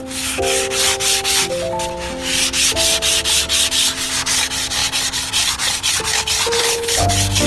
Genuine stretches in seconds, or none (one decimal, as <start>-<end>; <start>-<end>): 0.0-6.6; 7.1-7.5